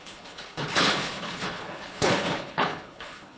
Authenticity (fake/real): fake